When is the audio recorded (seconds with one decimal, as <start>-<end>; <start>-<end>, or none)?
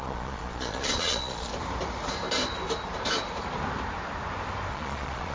1.5-4.7